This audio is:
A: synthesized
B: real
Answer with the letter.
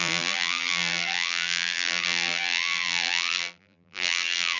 A